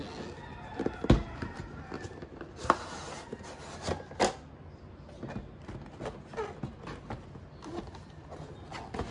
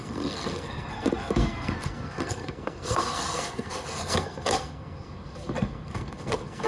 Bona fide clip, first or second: first